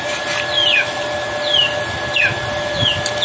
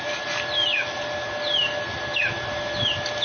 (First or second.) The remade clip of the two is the first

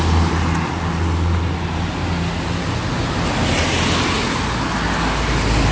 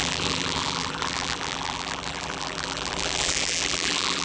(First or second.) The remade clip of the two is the second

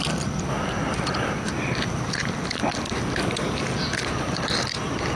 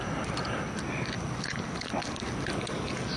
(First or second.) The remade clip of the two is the first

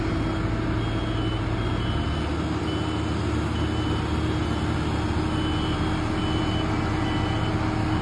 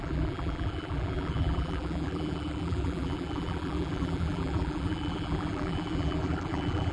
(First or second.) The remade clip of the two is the second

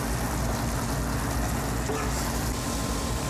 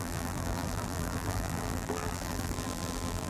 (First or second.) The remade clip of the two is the second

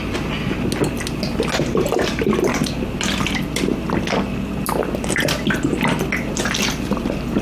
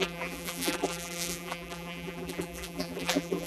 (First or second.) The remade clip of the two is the second